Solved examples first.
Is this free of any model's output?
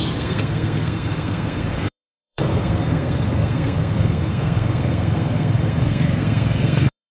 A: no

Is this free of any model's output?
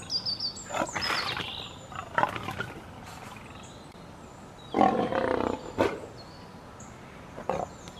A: yes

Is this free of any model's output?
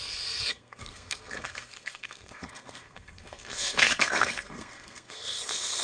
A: no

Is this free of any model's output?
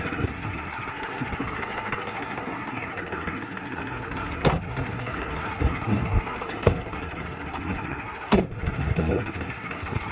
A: no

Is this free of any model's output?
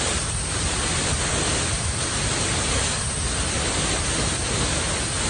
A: yes